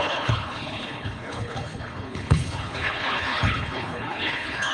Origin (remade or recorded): remade